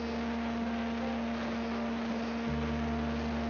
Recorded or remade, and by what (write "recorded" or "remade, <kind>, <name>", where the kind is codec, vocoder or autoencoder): recorded